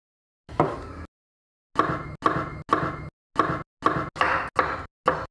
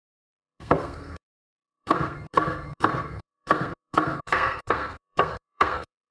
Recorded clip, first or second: first